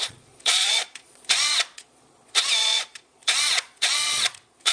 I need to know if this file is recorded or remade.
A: remade